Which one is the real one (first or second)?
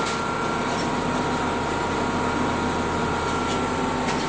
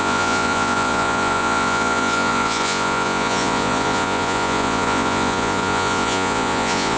first